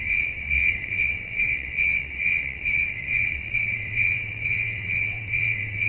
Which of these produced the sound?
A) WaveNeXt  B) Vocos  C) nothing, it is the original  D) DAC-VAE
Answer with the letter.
A